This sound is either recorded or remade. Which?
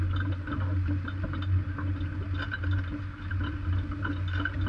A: recorded